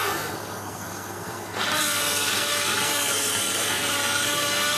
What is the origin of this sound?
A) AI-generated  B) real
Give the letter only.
A